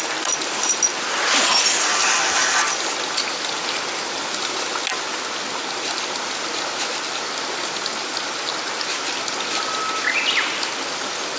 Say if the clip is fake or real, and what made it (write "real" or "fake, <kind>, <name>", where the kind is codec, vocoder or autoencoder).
real